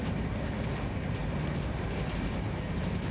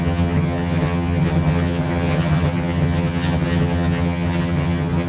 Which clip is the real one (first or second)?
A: first